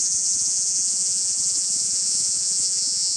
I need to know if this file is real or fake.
fake